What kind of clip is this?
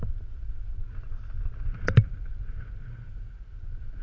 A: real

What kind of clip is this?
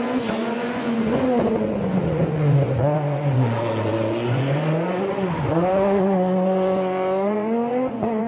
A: fake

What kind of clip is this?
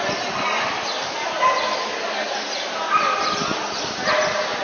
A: real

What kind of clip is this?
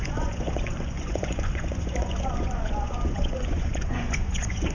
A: fake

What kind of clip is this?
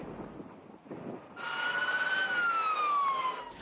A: real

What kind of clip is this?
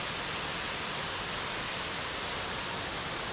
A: real